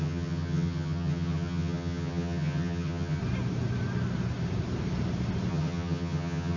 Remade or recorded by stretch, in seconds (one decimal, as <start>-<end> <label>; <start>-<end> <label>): 0.0-3.2 remade; 3.2-5.5 recorded; 5.5-6.6 remade

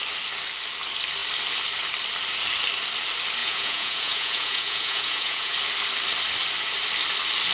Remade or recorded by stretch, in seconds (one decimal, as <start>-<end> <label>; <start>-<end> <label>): 0.0-3.4 recorded; 3.4-5.5 remade; 5.5-7.5 recorded

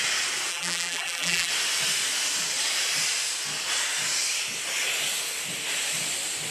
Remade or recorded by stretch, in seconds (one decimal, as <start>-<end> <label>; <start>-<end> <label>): 0.0-0.5 recorded; 0.5-1.5 remade; 1.5-6.5 recorded